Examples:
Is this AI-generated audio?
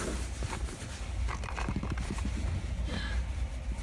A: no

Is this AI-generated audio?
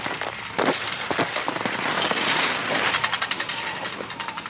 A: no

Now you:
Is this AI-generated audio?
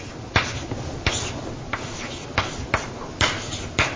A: no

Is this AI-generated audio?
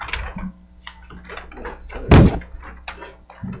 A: no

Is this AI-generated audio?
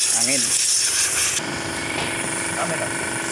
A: yes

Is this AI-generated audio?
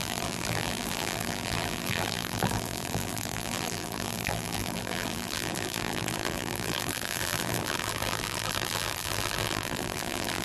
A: yes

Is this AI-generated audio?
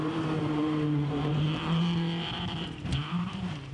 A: yes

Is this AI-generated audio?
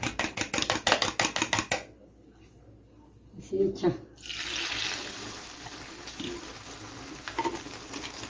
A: no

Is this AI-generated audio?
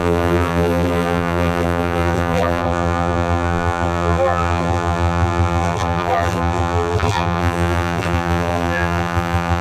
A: yes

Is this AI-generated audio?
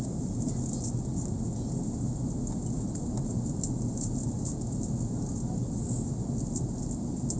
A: no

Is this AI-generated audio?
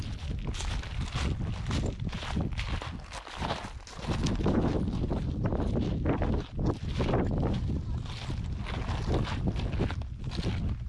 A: no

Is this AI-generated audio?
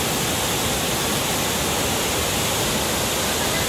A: no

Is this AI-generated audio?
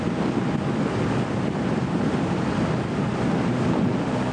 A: no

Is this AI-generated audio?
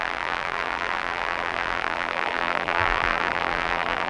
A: yes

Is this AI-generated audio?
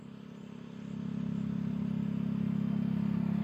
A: no